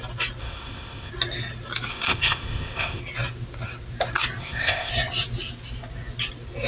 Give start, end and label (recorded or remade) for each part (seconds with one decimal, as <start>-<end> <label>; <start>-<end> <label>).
0.0-0.4 recorded; 0.4-1.1 remade; 1.1-1.9 recorded; 1.9-3.0 remade; 3.0-4.4 recorded; 4.4-4.9 remade; 4.9-6.7 recorded